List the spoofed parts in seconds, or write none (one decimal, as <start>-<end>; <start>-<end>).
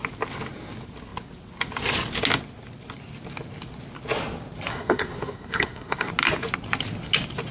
4.7-6.1